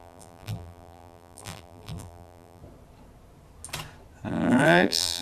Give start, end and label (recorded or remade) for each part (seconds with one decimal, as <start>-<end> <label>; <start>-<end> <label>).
0.0-2.6 remade; 2.6-4.3 recorded; 4.3-5.2 remade